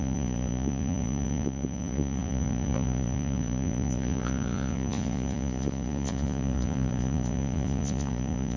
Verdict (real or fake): fake